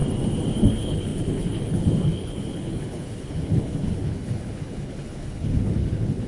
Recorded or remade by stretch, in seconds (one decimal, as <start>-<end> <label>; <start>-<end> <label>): 0.0-0.7 recorded; 0.7-6.3 remade